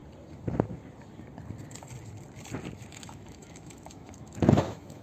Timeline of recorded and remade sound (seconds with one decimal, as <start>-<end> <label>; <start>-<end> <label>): 0.0-2.9 recorded; 2.9-5.0 remade